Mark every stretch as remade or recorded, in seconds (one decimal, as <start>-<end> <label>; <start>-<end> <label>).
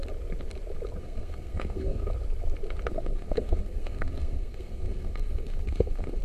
0.0-1.0 recorded; 1.0-2.1 remade; 2.1-2.9 recorded; 2.9-6.2 remade